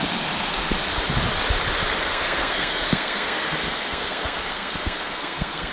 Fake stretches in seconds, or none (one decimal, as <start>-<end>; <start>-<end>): 2.1-5.7

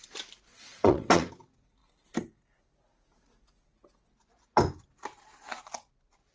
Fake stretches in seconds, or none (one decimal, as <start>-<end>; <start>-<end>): 0.5-1.3